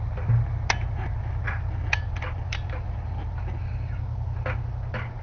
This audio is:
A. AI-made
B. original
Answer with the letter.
B